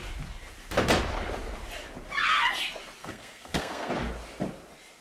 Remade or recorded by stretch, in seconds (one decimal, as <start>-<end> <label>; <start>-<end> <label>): 0.0-3.0 recorded; 3.0-3.9 remade; 3.9-5.0 recorded